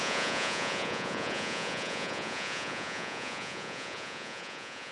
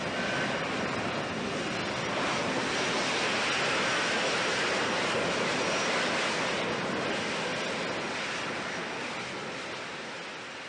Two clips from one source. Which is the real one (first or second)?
second